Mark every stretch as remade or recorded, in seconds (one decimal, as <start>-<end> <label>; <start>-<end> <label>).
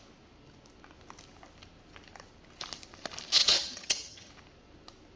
0.0-3.4 recorded; 3.4-4.3 remade; 4.3-5.2 recorded